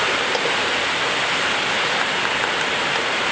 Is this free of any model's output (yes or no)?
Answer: yes